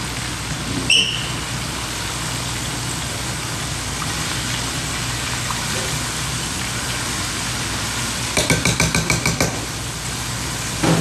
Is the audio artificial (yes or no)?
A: no